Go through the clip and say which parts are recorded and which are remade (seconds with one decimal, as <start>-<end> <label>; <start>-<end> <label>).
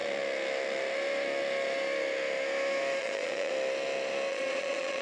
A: 0.0-3.0 recorded; 3.0-3.5 remade; 3.5-4.3 recorded; 4.3-5.0 remade